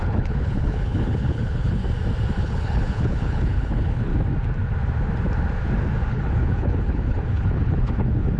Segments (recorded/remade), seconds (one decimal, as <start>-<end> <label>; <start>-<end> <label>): 0.0-1.8 remade; 1.8-2.4 recorded; 2.4-4.1 remade; 4.1-6.1 recorded; 6.1-8.4 remade